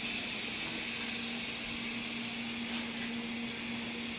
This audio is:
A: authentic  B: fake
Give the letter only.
A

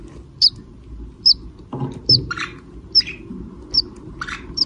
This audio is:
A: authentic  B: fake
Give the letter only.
A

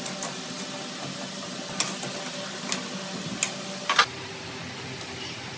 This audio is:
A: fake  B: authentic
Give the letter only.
B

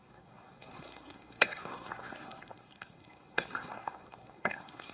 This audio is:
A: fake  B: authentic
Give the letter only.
A